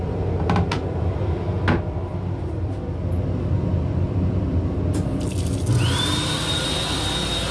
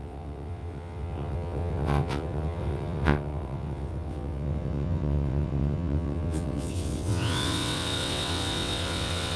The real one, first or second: first